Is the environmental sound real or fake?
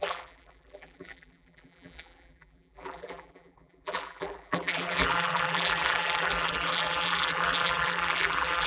fake